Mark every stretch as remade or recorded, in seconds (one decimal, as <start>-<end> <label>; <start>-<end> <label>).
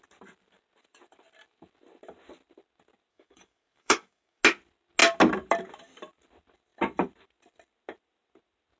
0.0-3.1 recorded; 3.1-4.4 remade; 4.4-8.8 recorded